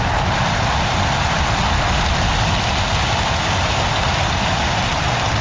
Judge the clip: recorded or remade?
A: recorded